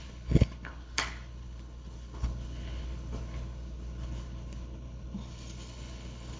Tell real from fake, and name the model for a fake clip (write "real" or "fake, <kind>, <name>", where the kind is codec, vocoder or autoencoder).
fake, codec, HILCodec